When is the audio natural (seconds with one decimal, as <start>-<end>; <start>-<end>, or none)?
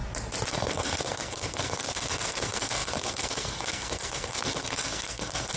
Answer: 0.0-0.5